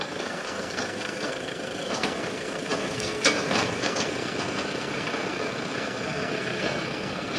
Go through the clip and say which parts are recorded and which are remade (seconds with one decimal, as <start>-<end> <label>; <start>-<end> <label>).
0.0-7.4 remade